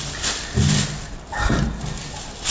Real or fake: real